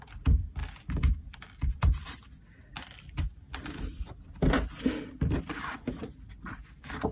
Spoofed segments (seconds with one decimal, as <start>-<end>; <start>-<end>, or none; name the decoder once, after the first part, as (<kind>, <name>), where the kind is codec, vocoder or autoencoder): 0.0-7.1 (vocoder, BigVGAN v2)